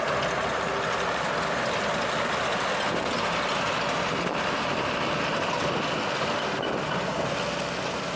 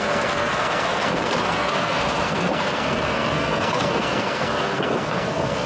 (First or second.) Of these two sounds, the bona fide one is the first